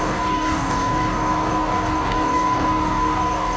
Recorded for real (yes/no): no